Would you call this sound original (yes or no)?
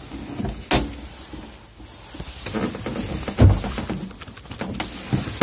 yes